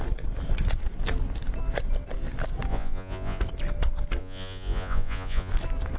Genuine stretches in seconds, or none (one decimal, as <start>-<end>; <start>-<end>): 0.0-2.7; 3.4-4.2; 5.5-6.0